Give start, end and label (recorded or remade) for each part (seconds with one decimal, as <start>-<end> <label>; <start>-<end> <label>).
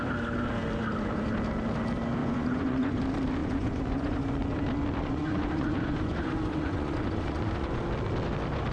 0.0-2.2 recorded; 2.2-3.0 remade; 3.0-3.4 recorded; 3.4-4.2 remade; 4.2-5.0 recorded; 5.0-7.8 remade; 7.8-8.7 recorded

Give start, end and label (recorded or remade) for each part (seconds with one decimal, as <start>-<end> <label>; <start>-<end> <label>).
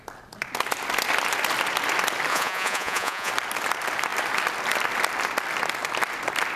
0.0-2.3 recorded; 2.3-3.3 remade; 3.3-6.6 recorded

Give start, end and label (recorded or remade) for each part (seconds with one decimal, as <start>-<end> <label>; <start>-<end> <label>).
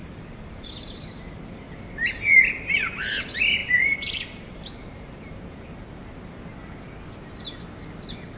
0.0-1.7 remade; 1.7-3.6 recorded; 3.6-5.6 remade; 5.6-8.4 recorded